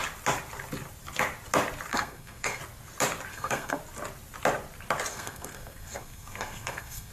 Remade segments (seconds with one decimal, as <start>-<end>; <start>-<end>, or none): 1.9-2.6; 3.3-3.8; 5.1-7.1